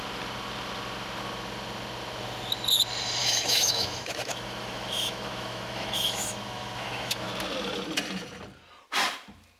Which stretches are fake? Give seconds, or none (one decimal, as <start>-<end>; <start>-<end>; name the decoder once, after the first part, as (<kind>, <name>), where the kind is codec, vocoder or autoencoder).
3.2-7.3 (autoencoder, DAC-VAE)